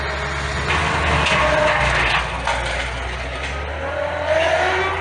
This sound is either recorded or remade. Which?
recorded